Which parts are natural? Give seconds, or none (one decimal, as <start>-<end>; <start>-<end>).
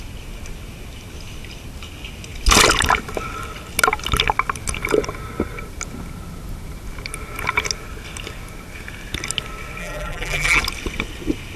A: 0.0-9.8; 10.6-11.6